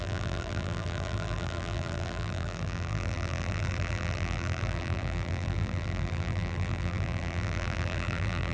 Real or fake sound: fake